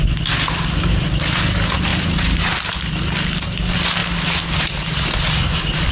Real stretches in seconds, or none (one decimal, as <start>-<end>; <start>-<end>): 0.0-5.9